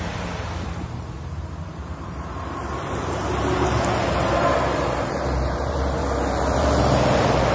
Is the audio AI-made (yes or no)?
yes